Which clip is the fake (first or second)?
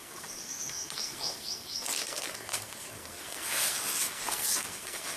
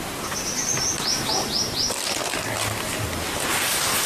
first